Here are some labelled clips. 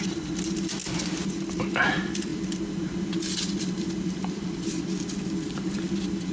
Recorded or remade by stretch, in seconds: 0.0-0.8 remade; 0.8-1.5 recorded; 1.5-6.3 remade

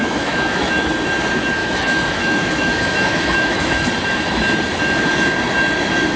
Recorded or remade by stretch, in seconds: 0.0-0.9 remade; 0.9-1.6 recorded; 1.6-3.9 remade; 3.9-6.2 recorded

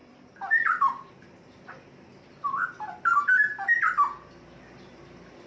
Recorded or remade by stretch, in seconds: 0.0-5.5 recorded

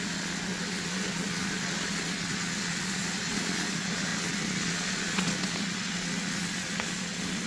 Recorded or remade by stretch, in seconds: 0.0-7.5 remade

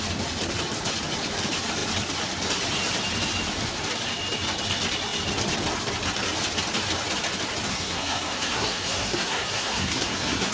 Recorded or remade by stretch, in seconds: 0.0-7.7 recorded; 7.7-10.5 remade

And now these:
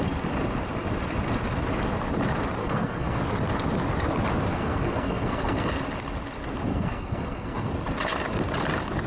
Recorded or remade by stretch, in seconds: 0.0-2.6 recorded; 2.6-3.2 remade; 3.2-4.5 recorded; 4.5-5.7 remade; 5.7-6.7 recorded; 6.7-7.7 remade; 7.7-9.1 recorded

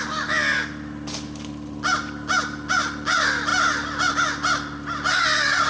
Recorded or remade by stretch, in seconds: 0.0-5.7 recorded